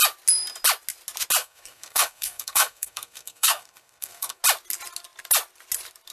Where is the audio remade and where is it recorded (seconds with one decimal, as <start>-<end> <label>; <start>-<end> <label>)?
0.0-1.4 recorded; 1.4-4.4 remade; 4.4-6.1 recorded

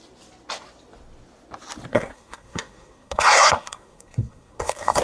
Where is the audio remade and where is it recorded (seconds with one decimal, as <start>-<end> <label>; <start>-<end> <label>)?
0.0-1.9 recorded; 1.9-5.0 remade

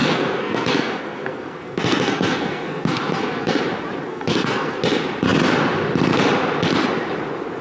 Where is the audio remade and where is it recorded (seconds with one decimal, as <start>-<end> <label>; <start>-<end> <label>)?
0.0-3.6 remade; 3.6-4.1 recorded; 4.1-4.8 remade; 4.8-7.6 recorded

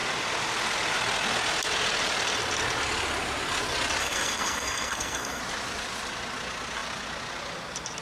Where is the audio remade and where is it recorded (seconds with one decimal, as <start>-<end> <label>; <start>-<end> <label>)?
0.0-4.0 recorded; 4.0-5.4 remade; 5.4-8.0 recorded

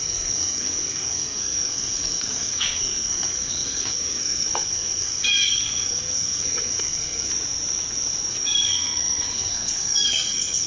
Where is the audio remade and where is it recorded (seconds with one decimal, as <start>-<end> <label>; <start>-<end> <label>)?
0.0-7.3 remade; 7.3-8.3 recorded; 8.3-10.7 remade

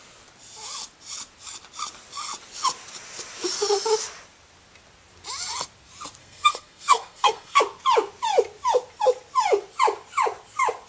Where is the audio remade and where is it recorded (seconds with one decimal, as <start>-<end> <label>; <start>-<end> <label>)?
0.0-6.2 recorded; 6.2-7.6 remade; 7.6-10.9 recorded

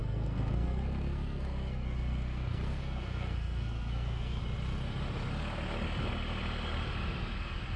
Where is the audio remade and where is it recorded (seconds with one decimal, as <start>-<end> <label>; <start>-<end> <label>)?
0.0-4.4 remade; 4.4-7.8 recorded

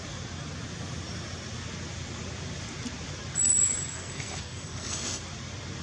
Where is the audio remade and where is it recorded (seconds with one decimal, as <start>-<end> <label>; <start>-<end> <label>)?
0.0-3.9 recorded; 3.9-5.2 remade; 5.2-5.8 recorded